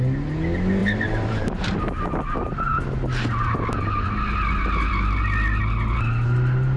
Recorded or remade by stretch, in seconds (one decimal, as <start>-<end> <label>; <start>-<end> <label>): 0.0-0.8 recorded; 0.8-1.5 remade; 1.5-6.8 recorded